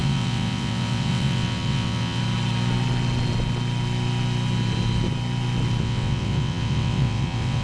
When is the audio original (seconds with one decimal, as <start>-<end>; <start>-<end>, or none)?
2.2-5.8